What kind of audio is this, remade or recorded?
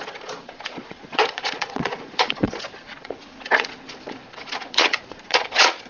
remade